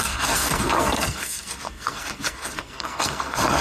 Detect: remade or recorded remade